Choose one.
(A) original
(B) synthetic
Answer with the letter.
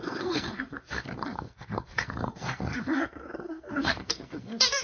B